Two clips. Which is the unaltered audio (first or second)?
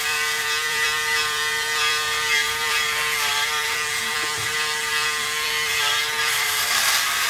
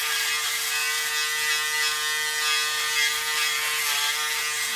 second